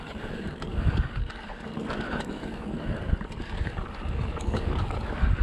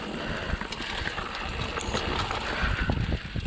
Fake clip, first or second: first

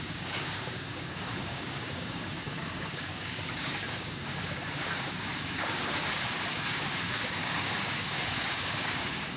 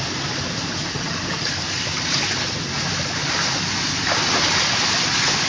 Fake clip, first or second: first